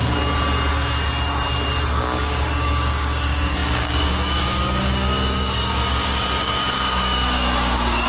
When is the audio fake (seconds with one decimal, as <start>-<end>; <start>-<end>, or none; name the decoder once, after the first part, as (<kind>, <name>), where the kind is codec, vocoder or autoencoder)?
1.9-8.1 (codec, DAC)